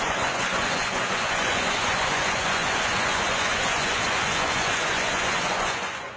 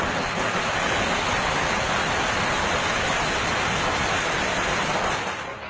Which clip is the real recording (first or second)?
second